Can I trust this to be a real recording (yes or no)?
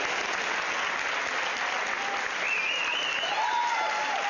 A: yes